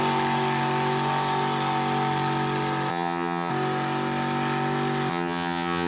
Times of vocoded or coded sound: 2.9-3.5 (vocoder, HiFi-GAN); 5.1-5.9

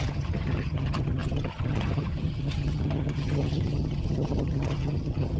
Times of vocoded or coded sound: 0.0-5.4 (vocoder, HiFi-GAN)

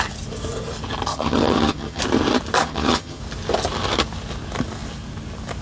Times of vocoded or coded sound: 1.1-2.0 (vocoder, HiFi-GAN); 2.6-3.2

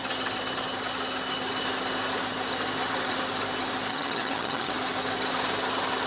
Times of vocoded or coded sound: 3.9-4.7 (vocoder, HiFi-GAN)

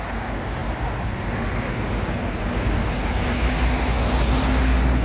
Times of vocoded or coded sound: none

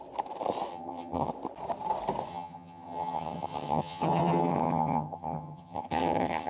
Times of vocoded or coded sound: 0.7-1.3 (vocoder, HiFi-GAN); 2.3-6.5